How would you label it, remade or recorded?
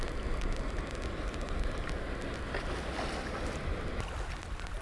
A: recorded